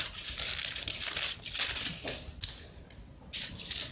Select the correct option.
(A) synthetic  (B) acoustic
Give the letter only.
B